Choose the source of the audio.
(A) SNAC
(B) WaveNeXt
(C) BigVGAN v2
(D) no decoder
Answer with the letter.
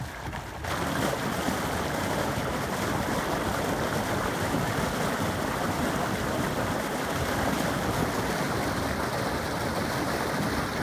D